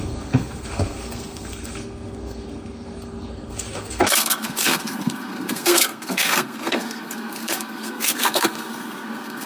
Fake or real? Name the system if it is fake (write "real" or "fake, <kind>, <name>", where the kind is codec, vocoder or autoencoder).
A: fake, codec, SNAC